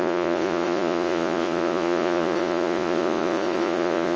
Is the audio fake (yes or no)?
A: yes